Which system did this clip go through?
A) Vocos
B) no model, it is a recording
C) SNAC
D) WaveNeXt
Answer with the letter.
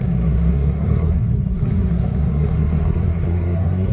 C